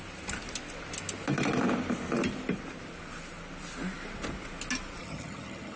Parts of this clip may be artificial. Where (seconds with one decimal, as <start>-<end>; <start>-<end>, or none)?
5.0-5.8